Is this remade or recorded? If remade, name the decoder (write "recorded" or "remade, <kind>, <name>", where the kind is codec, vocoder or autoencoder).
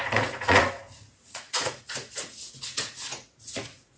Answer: remade, vocoder, Vocos